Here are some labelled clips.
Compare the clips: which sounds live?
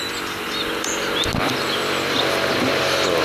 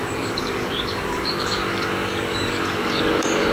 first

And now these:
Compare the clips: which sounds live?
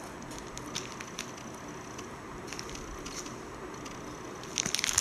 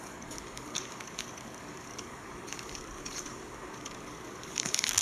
first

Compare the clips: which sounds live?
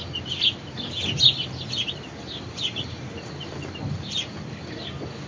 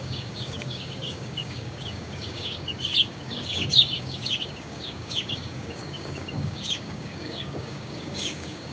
first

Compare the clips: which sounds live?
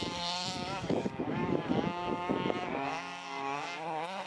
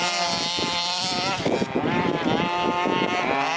second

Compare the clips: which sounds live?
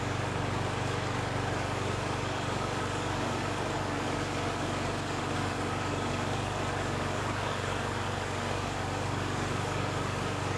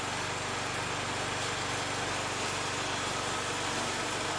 second